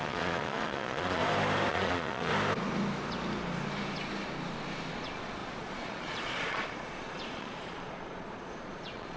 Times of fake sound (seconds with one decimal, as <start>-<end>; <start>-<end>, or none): 0.0-1.2; 1.7-2.3; 4.9-9.2